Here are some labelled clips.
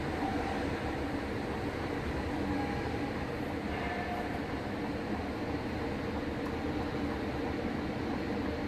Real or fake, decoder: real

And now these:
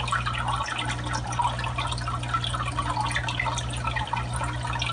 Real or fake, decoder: real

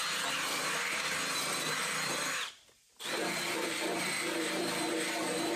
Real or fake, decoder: real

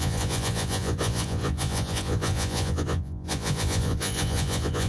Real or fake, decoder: fake, vocoder, Vocos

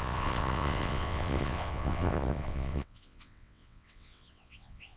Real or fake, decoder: fake, vocoder, WaveNeXt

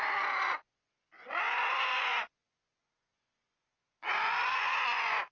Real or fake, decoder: fake, vocoder, Vocos